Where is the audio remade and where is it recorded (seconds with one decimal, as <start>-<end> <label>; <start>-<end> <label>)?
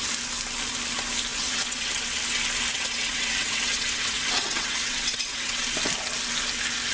0.0-1.3 recorded; 1.3-1.9 remade; 1.9-2.7 recorded; 2.7-5.6 remade; 5.6-6.9 recorded